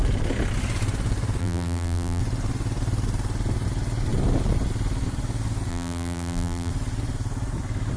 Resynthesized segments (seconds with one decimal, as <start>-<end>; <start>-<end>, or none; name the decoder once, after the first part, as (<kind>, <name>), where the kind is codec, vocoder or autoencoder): 1.4-2.2 (vocoder, BigVGAN v2); 5.7-6.7